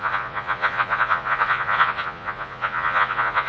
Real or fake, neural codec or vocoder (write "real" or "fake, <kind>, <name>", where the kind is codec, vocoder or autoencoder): fake, vocoder, Vocos